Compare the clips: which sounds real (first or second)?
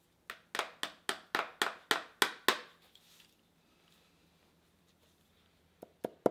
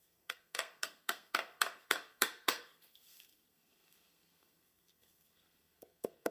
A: first